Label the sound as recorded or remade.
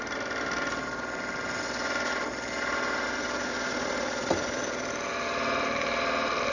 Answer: recorded